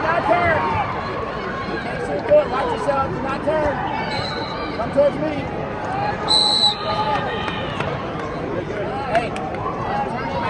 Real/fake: fake